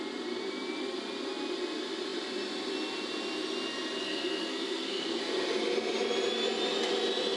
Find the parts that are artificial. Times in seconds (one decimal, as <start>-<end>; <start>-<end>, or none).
4.0-5.2